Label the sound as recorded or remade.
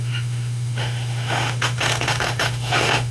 remade